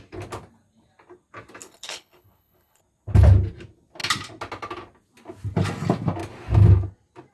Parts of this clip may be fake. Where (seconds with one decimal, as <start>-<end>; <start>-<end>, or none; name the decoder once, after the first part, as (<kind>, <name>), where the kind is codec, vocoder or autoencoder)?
1.6-2.8 (codec, HILCodec)